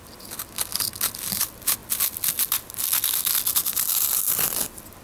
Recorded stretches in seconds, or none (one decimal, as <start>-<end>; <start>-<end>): 0.0-5.0